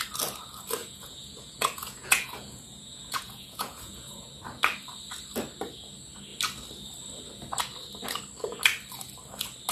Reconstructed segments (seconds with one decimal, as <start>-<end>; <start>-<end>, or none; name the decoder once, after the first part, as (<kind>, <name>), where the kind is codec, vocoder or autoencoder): 0.8-4.3 (vocoder, Vocos)